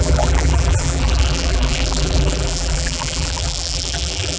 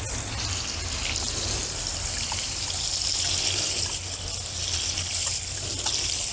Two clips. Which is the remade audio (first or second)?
first